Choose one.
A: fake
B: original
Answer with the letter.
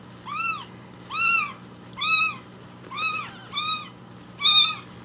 B